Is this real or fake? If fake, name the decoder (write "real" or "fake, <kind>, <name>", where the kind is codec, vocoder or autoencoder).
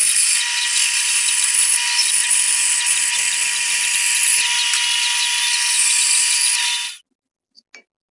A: real